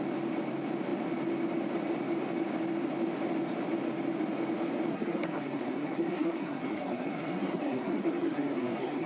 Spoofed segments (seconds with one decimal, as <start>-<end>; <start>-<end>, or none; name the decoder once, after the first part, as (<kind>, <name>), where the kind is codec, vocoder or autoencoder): 4.9-9.1 (codec, SNAC)